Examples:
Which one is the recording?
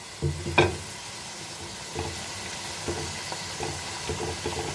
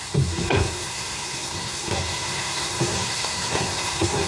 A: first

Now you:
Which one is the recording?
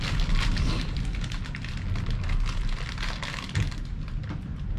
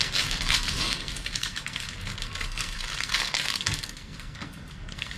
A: first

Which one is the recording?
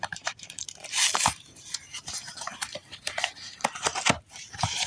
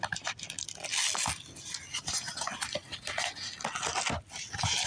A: second